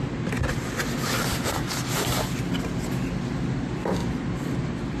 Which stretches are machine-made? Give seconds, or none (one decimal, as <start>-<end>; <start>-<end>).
4.0-5.0